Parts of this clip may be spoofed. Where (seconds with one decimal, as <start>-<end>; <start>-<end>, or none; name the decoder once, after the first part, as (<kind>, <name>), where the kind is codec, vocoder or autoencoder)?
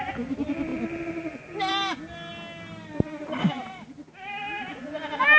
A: none